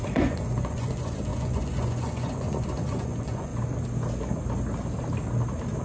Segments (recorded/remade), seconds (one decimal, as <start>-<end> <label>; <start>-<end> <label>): 0.0-3.5 remade; 3.5-5.8 recorded